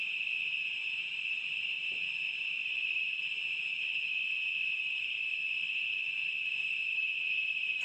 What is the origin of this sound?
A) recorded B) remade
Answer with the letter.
B